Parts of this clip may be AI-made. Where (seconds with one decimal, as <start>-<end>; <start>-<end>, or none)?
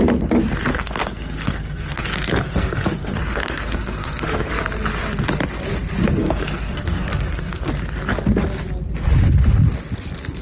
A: 0.7-4.5; 6.0-7.7